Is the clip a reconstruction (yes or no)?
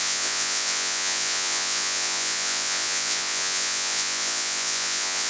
yes